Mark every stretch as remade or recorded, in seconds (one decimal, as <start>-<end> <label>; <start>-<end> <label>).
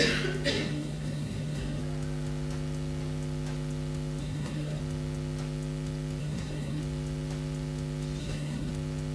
0.0-0.5 recorded; 0.5-1.8 remade; 1.8-4.2 recorded; 4.2-4.8 remade; 4.8-6.2 recorded; 6.2-6.8 remade; 6.8-8.2 recorded; 8.2-8.7 remade; 8.7-9.1 recorded